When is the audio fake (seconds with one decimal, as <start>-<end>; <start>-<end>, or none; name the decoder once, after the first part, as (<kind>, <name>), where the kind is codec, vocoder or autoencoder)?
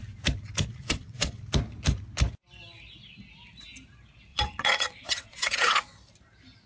0.8-1.4 (vocoder, WaveNeXt); 4.3-5.8